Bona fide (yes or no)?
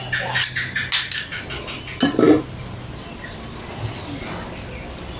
yes